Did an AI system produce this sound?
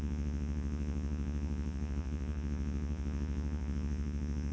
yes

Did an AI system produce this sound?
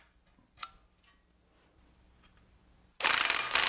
no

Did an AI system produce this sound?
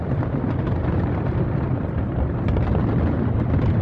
no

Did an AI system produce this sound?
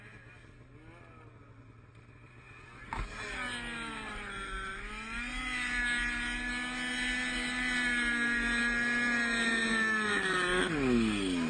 no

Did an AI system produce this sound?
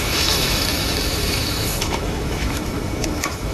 yes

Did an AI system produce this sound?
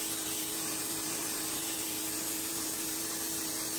yes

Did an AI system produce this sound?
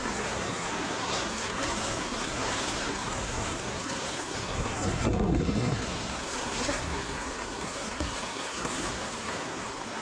yes